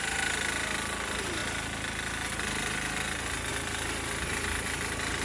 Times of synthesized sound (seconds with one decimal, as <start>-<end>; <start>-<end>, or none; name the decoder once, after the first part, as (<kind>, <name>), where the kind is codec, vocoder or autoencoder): none